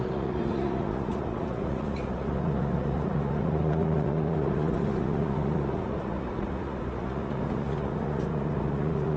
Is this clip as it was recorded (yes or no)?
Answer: no